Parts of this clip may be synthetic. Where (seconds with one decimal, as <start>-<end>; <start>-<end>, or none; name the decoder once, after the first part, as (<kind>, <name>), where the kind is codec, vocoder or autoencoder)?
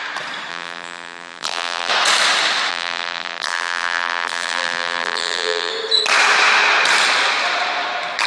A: 0.5-1.9 (vocoder, BigVGAN v2); 2.7-5.7